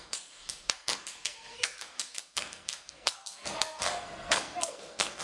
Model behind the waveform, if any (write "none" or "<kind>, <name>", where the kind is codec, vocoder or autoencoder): codec, SNAC